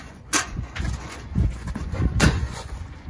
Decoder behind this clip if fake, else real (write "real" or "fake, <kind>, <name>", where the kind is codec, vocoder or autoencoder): fake, vocoder, Vocos